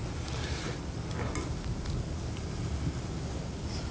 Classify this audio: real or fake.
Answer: real